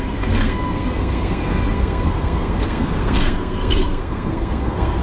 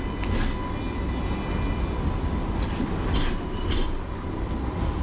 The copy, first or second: first